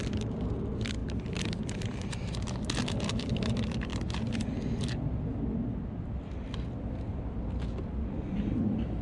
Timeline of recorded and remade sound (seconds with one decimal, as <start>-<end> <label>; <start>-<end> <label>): 0.0-1.0 recorded; 1.0-2.1 remade; 2.1-9.0 recorded